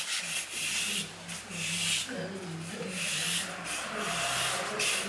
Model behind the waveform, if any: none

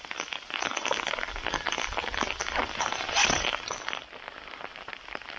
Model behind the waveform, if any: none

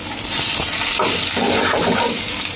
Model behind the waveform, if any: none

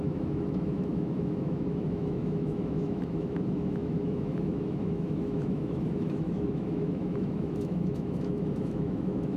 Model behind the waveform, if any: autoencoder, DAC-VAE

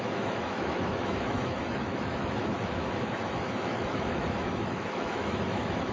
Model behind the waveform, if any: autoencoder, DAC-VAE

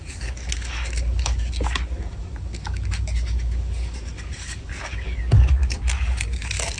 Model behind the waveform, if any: codec, DAC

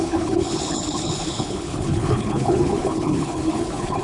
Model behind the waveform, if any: codec, HILCodec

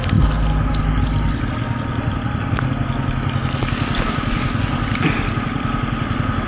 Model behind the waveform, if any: none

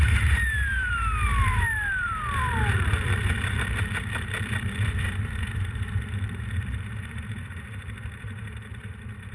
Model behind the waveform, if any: vocoder, BigVGAN v2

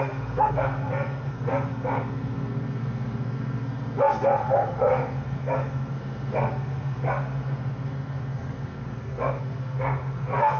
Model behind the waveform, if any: codec, SNAC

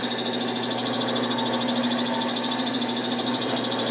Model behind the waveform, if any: none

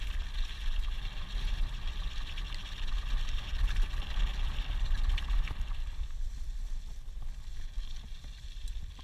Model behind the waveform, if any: none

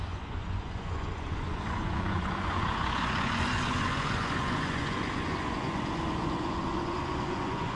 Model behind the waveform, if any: vocoder, Vocos